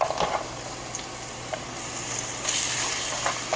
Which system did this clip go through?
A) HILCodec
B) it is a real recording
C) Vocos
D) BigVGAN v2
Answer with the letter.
B